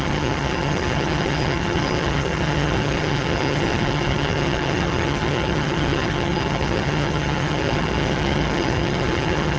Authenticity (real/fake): fake